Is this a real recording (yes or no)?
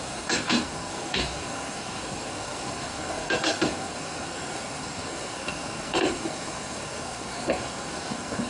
no